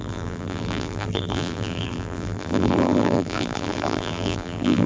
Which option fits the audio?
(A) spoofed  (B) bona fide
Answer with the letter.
A